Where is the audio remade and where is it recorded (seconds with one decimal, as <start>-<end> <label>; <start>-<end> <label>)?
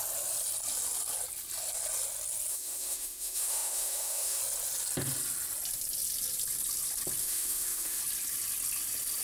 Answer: 0.0-2.5 recorded; 2.5-4.4 remade; 4.4-7.2 recorded; 7.2-8.0 remade; 8.0-9.2 recorded